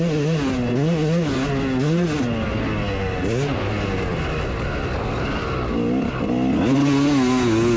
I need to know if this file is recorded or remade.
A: recorded